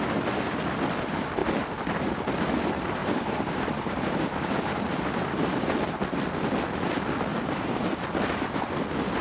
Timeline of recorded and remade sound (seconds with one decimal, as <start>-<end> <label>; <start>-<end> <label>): 0.0-1.4 recorded; 1.4-2.0 remade; 2.0-3.0 recorded; 3.0-5.8 remade; 5.8-7.3 recorded; 7.3-7.9 remade; 7.9-9.2 recorded